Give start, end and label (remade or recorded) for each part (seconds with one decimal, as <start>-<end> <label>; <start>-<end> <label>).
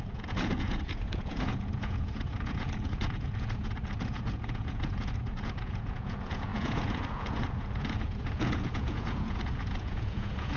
0.0-10.6 remade